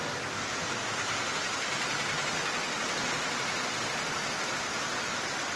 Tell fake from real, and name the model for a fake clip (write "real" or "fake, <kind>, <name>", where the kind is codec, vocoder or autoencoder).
real